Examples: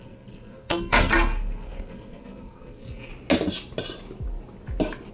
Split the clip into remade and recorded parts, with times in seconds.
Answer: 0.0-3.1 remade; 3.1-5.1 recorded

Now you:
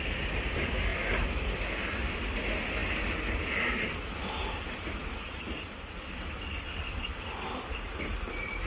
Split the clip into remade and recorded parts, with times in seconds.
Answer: 0.0-8.7 recorded

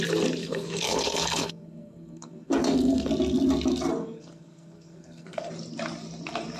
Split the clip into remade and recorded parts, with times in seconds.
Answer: 0.0-0.4 recorded; 0.4-3.1 remade; 3.1-4.0 recorded; 4.0-5.5 remade; 5.5-6.6 recorded

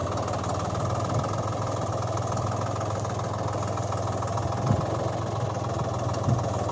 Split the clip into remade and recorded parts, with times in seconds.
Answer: 0.0-6.7 recorded

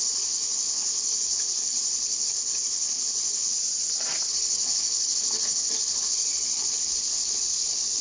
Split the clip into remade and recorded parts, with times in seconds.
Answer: 0.0-3.6 remade; 3.6-4.3 recorded; 4.3-8.0 remade